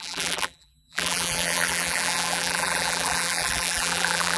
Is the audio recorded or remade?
remade